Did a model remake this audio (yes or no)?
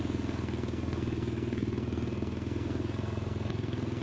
yes